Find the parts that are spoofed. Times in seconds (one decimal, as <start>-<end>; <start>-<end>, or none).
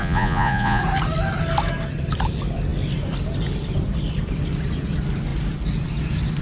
0.0-0.8